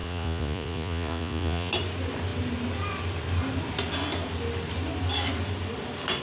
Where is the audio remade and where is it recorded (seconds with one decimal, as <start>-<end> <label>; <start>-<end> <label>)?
0.0-1.7 remade; 1.7-6.2 recorded